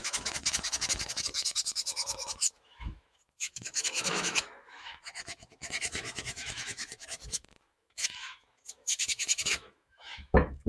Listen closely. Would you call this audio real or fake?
fake